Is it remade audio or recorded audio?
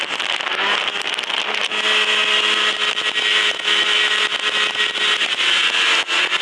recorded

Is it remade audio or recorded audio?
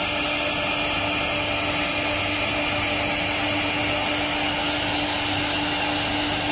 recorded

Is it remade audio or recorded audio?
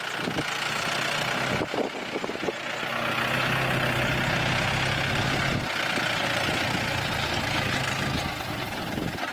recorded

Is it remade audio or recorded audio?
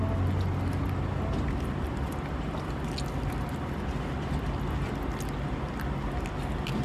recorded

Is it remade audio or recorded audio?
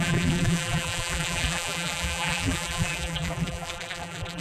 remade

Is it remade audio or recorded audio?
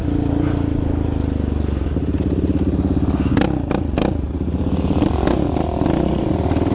recorded